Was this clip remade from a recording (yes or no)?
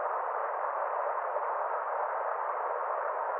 no